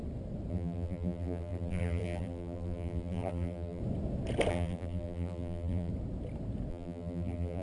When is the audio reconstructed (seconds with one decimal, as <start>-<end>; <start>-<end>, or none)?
0.5-3.8; 4.5-5.9; 6.7-7.6